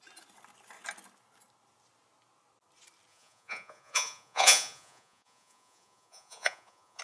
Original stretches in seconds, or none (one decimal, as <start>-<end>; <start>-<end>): 0.0-3.1